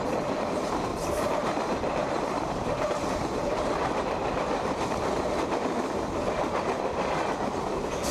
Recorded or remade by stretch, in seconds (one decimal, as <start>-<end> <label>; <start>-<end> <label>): 0.0-0.9 recorded; 0.9-5.0 remade; 5.0-8.1 recorded